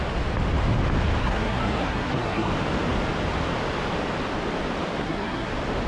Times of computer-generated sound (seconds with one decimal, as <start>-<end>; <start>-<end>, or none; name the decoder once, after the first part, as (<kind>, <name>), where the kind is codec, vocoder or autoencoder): 1.2-2.5 (codec, SNAC); 5.0-5.5